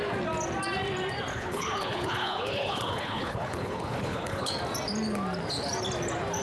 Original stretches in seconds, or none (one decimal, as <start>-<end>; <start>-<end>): 0.0-1.3; 4.5-6.4